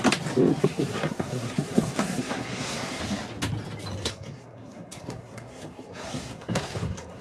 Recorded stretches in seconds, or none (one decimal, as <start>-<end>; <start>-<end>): 0.0-0.5; 3.0-4.0